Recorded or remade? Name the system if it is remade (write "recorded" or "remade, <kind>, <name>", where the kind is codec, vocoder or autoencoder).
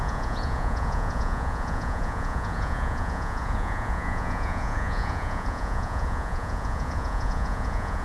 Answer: remade, vocoder, Vocos